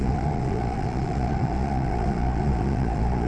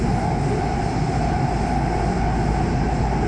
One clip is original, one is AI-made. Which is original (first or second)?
second